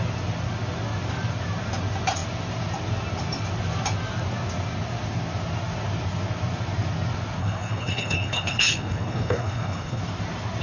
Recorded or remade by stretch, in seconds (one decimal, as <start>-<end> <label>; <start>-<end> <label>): 0.0-7.4 recorded; 7.4-10.0 remade; 10.0-10.6 recorded